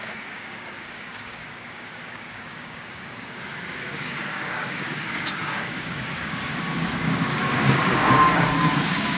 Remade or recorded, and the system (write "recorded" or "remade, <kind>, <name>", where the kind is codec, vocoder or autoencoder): remade, codec, DAC